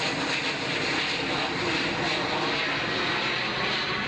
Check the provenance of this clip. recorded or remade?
recorded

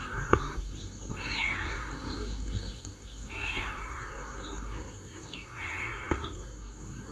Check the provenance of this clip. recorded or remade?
remade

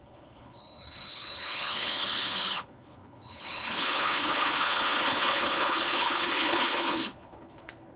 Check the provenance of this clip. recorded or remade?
remade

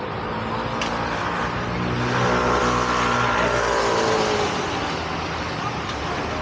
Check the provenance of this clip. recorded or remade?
recorded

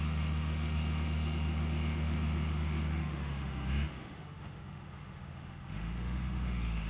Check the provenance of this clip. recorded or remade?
remade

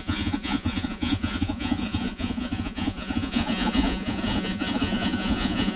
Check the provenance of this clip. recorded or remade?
remade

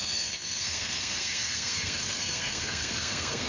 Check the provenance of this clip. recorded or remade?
remade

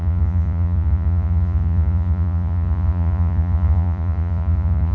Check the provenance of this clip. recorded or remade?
remade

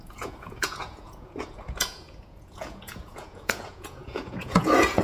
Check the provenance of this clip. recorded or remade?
remade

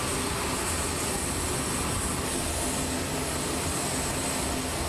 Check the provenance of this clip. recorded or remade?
recorded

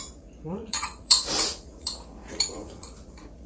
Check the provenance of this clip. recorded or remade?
remade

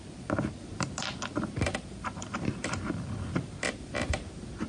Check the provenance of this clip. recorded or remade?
recorded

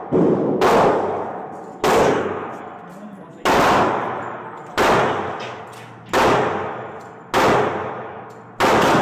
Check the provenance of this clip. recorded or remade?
recorded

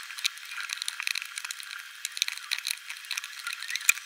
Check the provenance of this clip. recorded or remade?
recorded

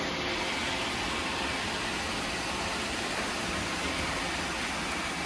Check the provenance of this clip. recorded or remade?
recorded